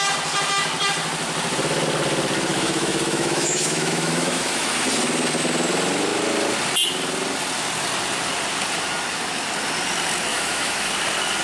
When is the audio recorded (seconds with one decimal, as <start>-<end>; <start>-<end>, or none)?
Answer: 0.0-2.5; 4.7-10.3; 10.9-11.4